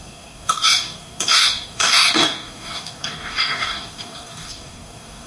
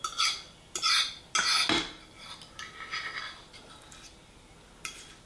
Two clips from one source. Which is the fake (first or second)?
first